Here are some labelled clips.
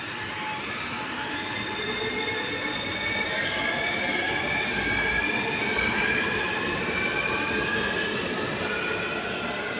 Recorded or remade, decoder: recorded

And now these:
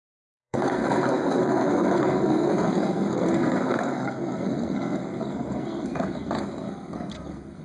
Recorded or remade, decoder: remade, codec, SNAC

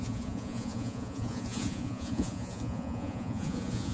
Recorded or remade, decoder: remade, vocoder, Vocos